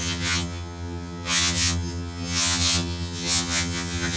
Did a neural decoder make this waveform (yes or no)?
yes